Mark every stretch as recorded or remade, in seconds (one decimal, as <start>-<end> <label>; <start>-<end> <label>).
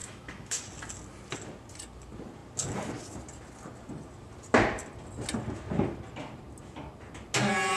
0.0-0.6 remade; 0.6-7.8 recorded